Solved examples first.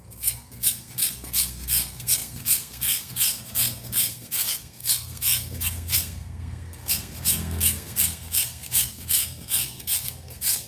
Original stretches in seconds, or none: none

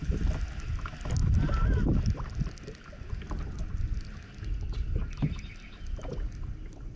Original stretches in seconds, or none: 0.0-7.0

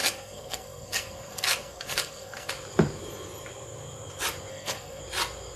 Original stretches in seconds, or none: 2.5-4.5; 5.0-5.6

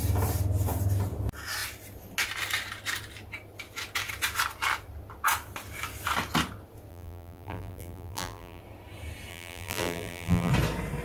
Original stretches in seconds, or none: 0.0-6.9; 8.6-9.3; 10.5-11.0

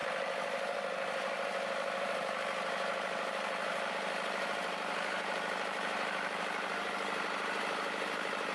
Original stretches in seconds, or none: none

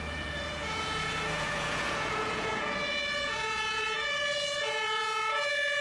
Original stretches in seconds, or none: none